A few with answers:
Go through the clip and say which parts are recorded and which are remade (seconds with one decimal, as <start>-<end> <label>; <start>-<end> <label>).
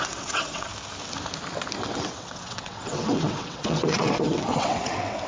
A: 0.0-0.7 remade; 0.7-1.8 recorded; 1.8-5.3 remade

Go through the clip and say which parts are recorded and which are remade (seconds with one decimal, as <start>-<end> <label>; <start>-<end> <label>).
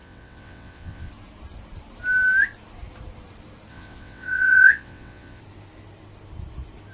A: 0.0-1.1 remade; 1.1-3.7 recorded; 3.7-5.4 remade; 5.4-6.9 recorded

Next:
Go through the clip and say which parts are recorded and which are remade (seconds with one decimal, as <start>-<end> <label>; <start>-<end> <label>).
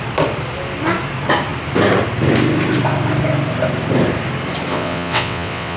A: 0.0-4.7 recorded; 4.7-5.8 remade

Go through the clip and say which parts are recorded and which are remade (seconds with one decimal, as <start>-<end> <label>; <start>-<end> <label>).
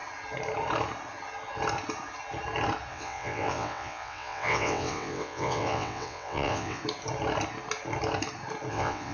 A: 0.0-2.9 recorded; 2.9-6.8 remade; 6.8-8.7 recorded; 8.7-9.1 remade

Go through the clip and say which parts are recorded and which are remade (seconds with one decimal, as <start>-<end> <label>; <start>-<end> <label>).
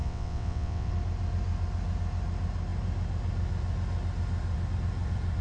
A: 0.0-0.9 remade; 0.9-5.4 recorded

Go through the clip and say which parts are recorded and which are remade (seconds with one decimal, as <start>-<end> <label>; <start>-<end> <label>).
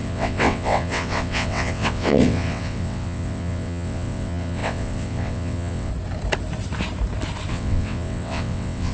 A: 0.0-5.9 remade; 5.9-7.5 recorded; 7.5-8.9 remade